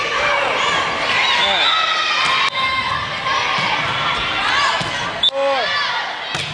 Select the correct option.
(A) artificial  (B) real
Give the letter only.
B